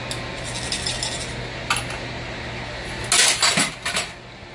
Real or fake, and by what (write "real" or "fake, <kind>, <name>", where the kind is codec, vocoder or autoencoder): real